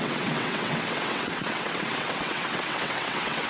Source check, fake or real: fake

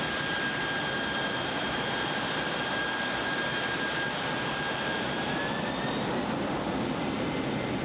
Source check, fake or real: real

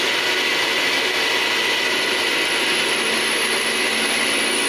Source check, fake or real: real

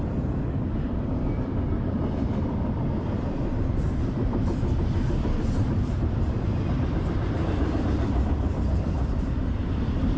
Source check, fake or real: fake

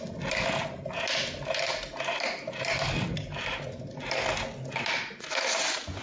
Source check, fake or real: real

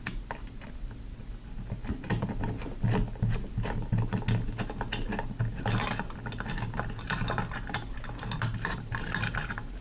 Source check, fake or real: real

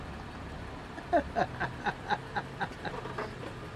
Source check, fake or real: real